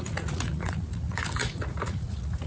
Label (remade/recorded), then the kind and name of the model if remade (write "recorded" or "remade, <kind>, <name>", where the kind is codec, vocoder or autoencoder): remade, vocoder, Vocos